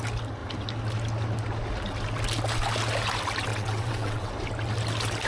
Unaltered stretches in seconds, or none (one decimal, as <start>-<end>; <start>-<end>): 0.0-3.5; 4.3-5.3